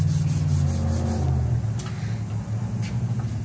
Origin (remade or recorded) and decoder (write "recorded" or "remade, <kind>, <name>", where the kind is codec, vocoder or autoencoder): recorded